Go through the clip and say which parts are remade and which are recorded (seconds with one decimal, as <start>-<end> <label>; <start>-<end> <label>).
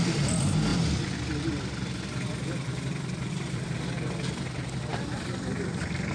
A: 0.0-0.7 remade; 0.7-3.3 recorded; 3.3-6.1 remade